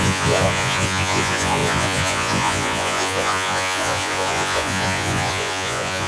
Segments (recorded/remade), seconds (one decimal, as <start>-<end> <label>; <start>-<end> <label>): 0.0-6.1 remade